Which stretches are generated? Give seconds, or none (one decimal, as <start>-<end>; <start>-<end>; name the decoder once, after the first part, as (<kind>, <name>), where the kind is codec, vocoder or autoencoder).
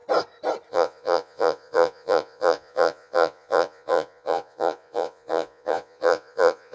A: 0.7-6.7 (vocoder, Vocos)